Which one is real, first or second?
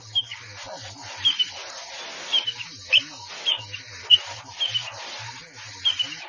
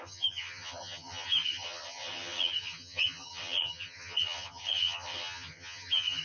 first